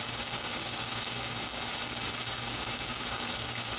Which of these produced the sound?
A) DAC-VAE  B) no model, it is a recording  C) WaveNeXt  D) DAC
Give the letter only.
D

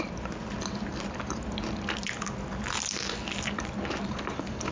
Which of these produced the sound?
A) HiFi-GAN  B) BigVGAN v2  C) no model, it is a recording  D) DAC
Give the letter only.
C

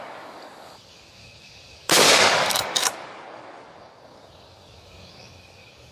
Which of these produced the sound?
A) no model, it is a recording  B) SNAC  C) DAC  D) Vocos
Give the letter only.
C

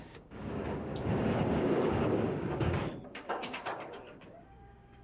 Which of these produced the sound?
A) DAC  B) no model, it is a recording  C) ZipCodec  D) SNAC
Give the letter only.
A